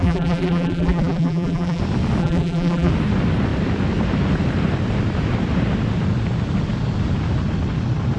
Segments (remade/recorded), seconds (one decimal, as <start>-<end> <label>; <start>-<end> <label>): 0.0-1.8 remade; 1.8-2.2 recorded; 2.2-2.9 remade; 2.9-8.2 recorded